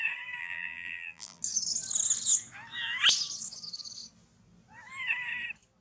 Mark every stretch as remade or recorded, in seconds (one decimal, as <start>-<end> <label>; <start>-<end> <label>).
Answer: 0.0-0.4 recorded; 0.4-1.4 remade; 1.4-5.8 recorded

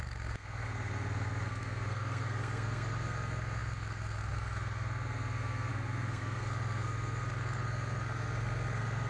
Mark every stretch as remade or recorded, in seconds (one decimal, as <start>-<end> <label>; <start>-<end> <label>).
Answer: 0.0-9.1 remade

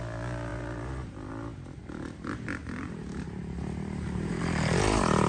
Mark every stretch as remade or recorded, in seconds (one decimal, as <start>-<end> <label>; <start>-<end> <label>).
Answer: 0.0-0.5 recorded; 0.5-1.3 remade; 1.3-2.6 recorded; 2.6-4.4 remade; 4.4-5.3 recorded